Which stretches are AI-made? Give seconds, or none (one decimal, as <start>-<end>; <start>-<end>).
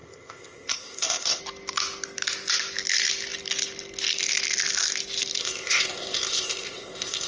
0.0-1.4; 5.4-7.3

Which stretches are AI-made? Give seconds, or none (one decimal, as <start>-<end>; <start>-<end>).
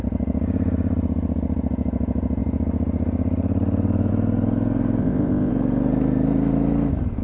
5.0-5.5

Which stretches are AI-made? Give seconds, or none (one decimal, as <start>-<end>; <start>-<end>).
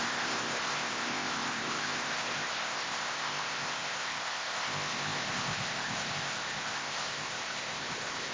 0.0-8.3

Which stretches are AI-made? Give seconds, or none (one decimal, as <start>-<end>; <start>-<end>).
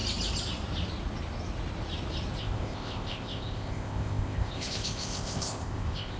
2.4-6.2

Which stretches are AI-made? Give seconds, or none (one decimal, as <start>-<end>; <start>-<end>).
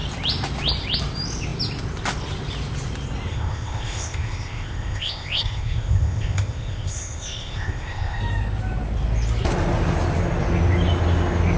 3.3-8.2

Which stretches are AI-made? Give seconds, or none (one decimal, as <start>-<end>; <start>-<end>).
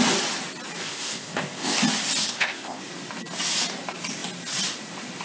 0.8-1.8; 2.2-2.8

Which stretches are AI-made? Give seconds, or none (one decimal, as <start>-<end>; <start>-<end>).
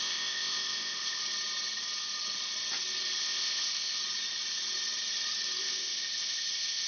0.0-1.2; 3.2-4.0; 5.6-6.9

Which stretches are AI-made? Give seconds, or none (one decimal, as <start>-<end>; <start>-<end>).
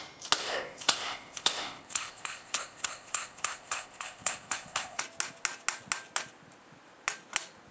0.4-5.0